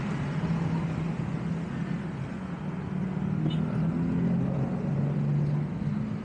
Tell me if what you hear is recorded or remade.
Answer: recorded